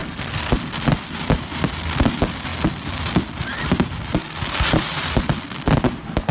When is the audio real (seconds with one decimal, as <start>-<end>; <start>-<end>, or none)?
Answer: 0.5-6.3